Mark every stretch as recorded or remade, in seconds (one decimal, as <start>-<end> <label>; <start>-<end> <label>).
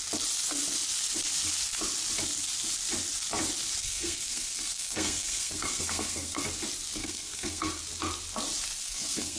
0.0-3.8 recorded; 3.8-6.4 remade; 6.4-7.0 recorded; 7.0-7.8 remade; 7.8-8.8 recorded; 8.8-9.4 remade